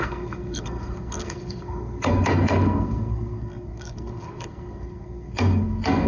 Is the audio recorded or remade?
remade